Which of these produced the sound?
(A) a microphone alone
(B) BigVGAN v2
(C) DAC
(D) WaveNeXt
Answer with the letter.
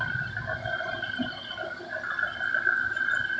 B